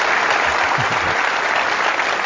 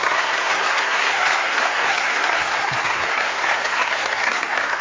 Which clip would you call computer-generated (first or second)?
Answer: second